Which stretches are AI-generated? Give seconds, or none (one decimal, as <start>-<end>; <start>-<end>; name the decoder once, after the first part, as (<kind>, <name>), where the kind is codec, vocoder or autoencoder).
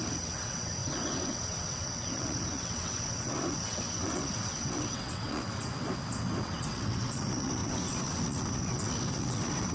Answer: 0.0-5.7 (vocoder, WaveNeXt); 6.4-9.7